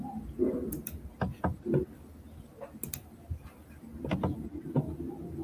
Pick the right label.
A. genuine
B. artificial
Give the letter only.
A